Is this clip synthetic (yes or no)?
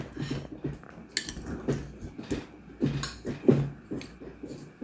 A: no